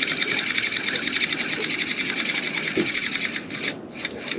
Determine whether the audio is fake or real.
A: real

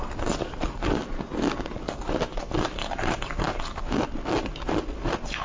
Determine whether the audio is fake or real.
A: real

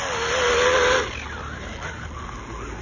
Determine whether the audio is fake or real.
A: real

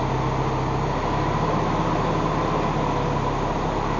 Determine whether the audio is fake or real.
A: real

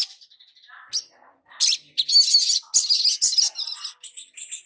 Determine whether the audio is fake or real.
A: real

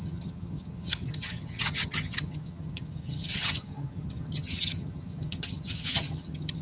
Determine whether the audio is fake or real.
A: fake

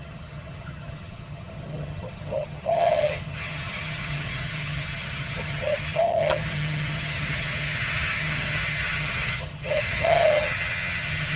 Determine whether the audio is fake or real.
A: fake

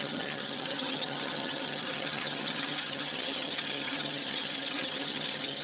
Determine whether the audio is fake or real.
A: fake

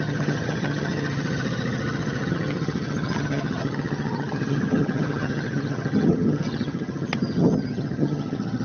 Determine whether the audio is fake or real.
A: fake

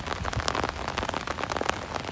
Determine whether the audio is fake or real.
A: real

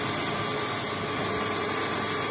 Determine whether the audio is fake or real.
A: real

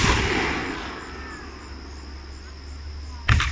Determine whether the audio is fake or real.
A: real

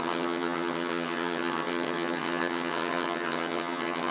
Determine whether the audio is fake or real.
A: fake